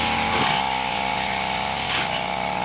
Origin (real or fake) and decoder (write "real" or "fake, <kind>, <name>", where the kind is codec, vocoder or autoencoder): real